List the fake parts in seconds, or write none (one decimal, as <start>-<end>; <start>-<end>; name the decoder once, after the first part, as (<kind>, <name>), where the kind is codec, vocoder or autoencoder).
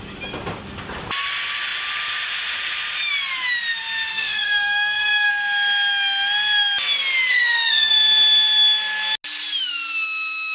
4.1-5.3 (codec, SNAC); 7.3-7.9